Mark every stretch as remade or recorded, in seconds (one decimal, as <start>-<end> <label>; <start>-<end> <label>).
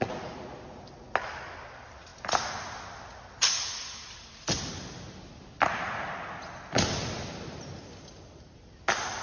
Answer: 0.0-9.2 recorded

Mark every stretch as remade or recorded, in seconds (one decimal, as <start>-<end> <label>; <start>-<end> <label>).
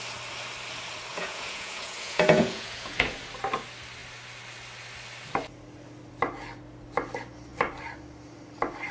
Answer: 0.0-1.1 recorded; 1.1-3.2 remade; 3.2-8.9 recorded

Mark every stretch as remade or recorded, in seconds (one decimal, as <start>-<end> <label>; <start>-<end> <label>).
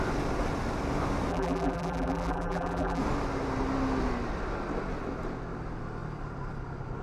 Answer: 0.0-1.3 recorded; 1.3-3.0 remade; 3.0-7.0 recorded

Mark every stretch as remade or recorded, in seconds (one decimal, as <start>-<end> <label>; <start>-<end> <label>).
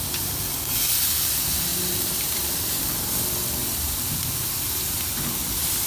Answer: 0.0-1.7 recorded; 1.7-2.8 remade; 2.8-3.6 recorded; 3.6-4.9 remade; 4.9-5.9 recorded